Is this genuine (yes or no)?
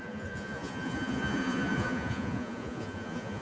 no